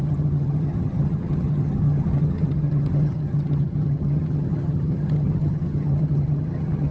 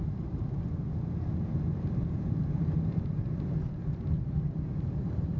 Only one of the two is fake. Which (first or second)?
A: first